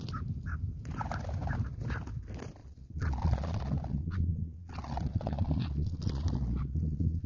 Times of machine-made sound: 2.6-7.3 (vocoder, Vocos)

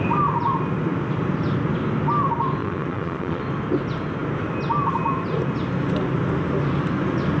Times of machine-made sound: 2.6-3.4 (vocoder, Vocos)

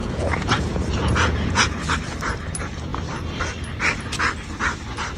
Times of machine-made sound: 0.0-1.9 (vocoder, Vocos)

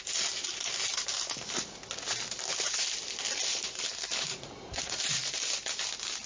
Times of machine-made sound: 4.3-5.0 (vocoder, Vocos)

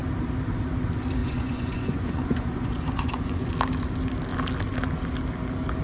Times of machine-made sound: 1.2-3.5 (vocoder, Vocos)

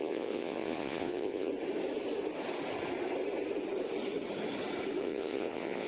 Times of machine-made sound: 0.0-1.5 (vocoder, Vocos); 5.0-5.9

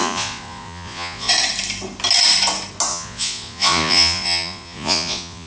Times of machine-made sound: 0.0-1.3 (vocoder, Vocos); 2.9-5.5

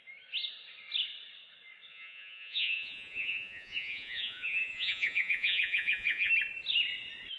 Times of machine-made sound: 1.9-6.3 (vocoder, Vocos)